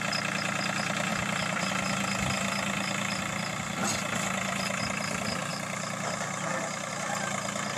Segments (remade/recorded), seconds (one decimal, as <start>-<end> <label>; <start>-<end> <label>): 0.0-1.1 recorded; 1.1-1.7 remade; 1.7-5.5 recorded; 5.5-6.9 remade; 6.9-7.8 recorded